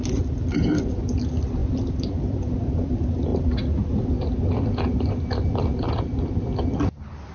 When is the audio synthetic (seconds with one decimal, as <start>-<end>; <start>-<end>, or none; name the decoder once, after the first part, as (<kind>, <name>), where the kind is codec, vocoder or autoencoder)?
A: 1.6-2.5 (vocoder, BigVGAN v2); 5.7-7.3